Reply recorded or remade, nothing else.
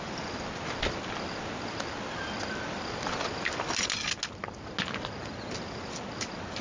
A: recorded